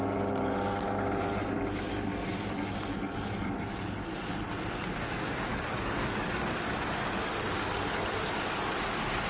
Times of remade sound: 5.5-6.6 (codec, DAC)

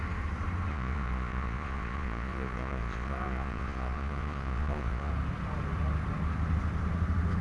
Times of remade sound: 0.7-5.1 (vocoder, Vocos)

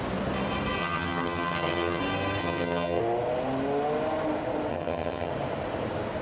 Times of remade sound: 0.8-2.0 (vocoder, HiFi-GAN); 2.4-3.0; 4.7-5.3

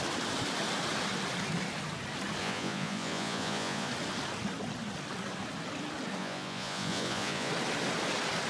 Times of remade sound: 2.4-3.9 (vocoder, Vocos); 6.2-7.5